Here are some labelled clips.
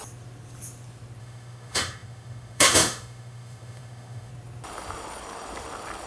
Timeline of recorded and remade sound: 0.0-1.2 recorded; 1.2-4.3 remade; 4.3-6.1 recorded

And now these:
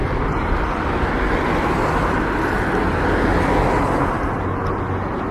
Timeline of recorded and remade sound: 0.0-5.3 recorded